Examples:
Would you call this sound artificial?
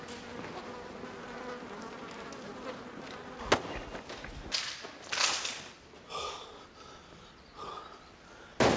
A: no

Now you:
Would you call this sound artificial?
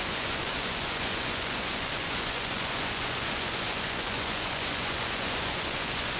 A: yes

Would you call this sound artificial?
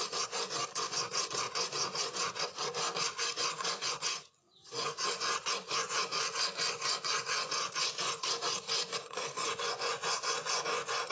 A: yes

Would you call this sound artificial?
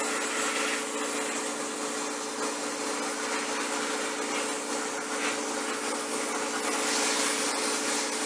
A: no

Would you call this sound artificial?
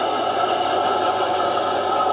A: yes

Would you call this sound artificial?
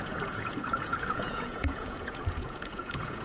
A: yes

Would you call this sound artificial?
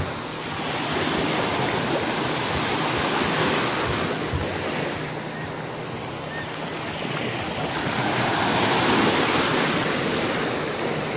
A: no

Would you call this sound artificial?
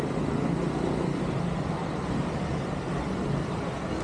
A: no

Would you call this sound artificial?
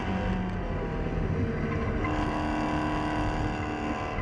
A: no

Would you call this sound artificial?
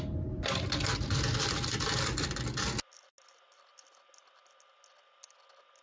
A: no